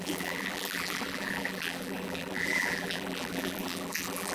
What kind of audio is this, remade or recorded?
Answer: remade